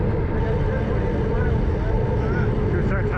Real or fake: real